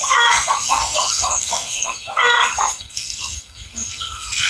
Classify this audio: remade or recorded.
remade